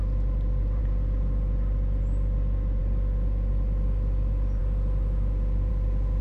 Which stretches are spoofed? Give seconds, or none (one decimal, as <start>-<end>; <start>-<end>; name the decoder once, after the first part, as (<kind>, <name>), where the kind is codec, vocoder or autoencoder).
none